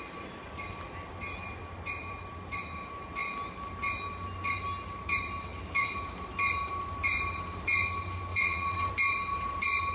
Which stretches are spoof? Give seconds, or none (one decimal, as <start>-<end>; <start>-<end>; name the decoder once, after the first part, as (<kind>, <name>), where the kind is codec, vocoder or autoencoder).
8.3-8.9 (vocoder, WaveNeXt)